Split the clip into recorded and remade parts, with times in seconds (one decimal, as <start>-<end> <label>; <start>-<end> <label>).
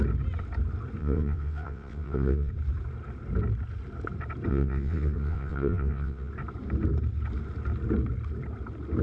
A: 0.0-1.0 recorded; 1.0-2.5 remade; 2.5-4.5 recorded; 4.5-6.3 remade; 6.3-9.0 recorded